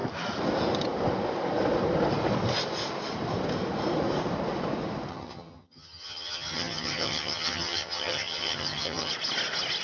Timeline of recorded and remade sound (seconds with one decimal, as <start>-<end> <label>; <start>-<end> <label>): 0.0-5.1 recorded; 5.1-9.1 remade; 9.1-9.8 recorded